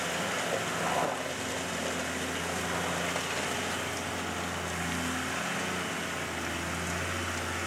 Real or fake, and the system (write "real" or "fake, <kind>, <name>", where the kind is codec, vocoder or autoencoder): real